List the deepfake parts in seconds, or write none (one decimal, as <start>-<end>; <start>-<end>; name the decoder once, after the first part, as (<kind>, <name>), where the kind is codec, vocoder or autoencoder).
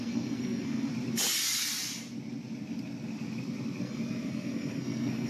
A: 0.0-0.9 (codec, SNAC); 3.8-5.3